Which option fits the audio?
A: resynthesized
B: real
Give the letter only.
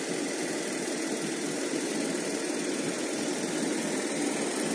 B